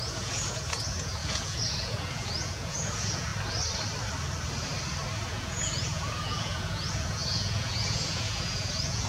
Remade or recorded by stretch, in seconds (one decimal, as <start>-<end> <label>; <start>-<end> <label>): 0.0-3.3 remade; 3.3-5.3 recorded; 5.3-9.1 remade